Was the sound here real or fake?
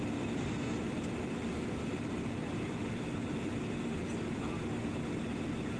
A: real